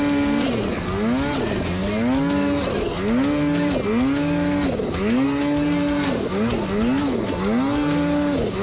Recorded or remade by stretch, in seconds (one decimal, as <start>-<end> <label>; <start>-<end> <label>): 0.0-8.6 recorded